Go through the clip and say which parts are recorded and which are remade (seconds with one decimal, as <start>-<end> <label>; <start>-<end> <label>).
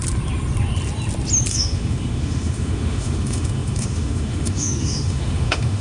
0.0-1.5 recorded; 1.5-5.8 remade